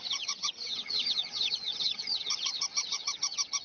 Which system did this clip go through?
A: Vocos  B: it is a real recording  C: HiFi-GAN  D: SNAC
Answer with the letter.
C